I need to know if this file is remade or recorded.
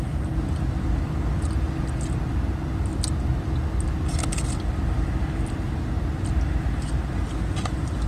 recorded